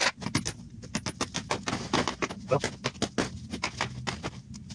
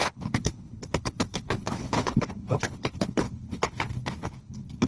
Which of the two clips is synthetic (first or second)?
second